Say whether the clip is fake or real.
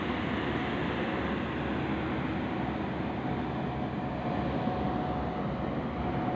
real